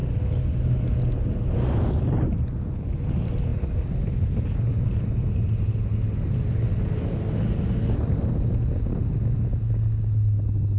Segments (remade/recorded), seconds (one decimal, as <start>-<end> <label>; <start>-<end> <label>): 0.0-10.8 recorded